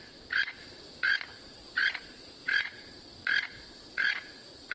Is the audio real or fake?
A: fake